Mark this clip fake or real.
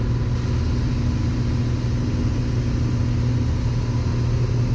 real